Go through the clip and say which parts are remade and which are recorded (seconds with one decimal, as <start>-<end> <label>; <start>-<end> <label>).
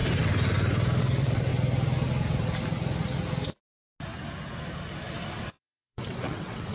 0.0-1.0 recorded; 1.0-1.5 remade; 1.5-5.5 recorded; 5.5-6.7 remade